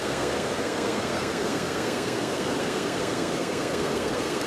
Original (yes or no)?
no